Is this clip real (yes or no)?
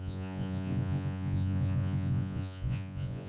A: no